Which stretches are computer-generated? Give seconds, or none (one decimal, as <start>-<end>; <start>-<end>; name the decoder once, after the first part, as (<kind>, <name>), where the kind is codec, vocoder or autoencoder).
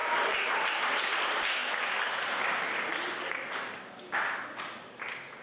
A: none